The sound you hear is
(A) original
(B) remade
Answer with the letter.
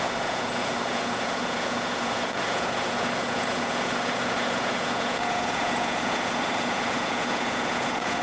B